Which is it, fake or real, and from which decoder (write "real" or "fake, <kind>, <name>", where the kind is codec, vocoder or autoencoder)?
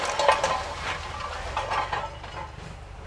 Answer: real